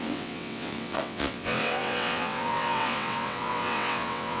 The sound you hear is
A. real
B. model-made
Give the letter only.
B